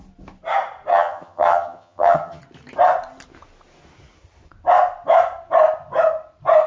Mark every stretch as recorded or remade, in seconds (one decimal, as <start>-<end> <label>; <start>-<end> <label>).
0.0-0.9 recorded; 0.9-2.4 remade; 2.4-6.7 recorded